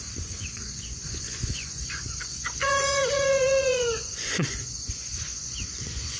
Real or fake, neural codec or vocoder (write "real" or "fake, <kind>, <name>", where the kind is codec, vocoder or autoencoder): fake, vocoder, Vocos